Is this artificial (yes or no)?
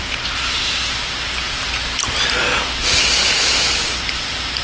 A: no